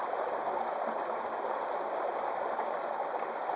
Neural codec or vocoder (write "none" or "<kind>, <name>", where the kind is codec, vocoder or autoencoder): none